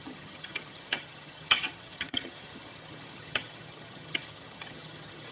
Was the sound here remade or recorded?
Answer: remade